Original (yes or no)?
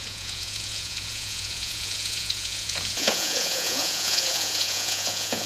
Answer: no